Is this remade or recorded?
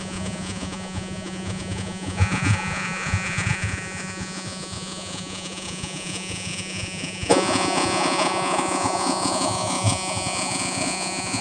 remade